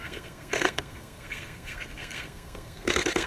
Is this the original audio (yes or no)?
no